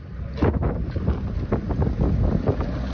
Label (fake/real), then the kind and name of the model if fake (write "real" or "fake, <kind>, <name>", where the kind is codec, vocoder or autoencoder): real